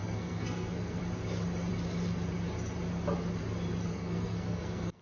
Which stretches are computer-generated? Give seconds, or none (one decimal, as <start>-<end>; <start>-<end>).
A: 0.0-1.0; 3.9-5.0